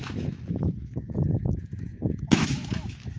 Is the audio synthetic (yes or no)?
yes